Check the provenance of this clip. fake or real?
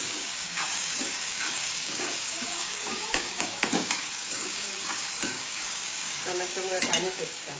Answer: fake